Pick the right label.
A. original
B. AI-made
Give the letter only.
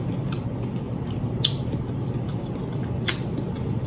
A